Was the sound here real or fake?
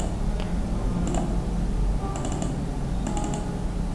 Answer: real